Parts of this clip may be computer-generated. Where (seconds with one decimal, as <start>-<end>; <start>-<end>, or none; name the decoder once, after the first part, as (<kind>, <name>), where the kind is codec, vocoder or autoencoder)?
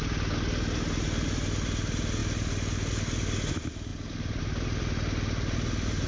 3.9-4.4 (vocoder, BigVGAN v2)